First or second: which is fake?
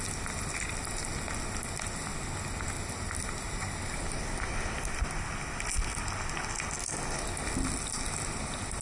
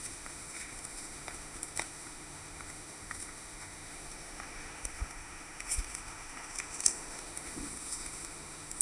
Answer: second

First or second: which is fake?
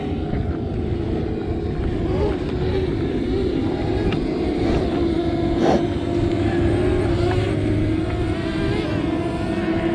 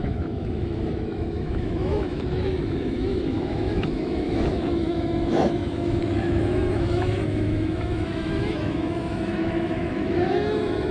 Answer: second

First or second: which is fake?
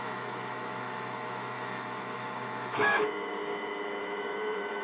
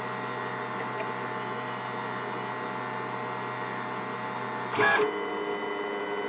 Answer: first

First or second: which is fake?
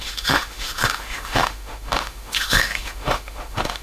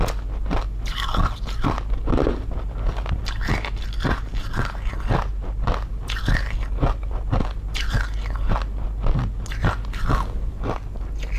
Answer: first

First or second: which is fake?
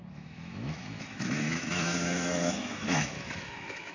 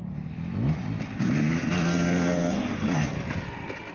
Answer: first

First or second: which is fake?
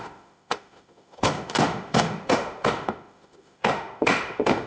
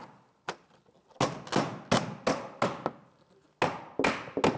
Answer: first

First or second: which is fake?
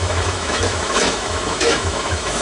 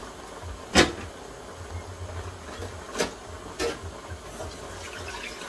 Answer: first